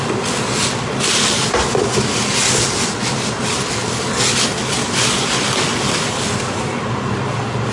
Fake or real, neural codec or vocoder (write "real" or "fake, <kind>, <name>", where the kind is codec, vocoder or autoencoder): real